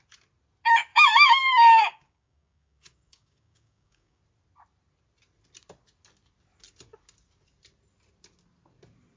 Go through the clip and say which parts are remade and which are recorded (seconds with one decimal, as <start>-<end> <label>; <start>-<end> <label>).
0.0-0.9 recorded; 0.9-4.2 remade; 4.2-9.2 recorded